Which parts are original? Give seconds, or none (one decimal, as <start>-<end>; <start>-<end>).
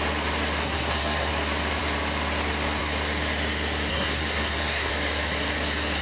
0.0-0.6; 1.3-3.9; 4.9-6.0